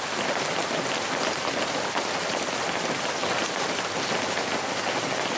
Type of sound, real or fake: real